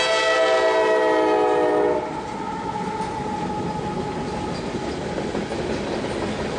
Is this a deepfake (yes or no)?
no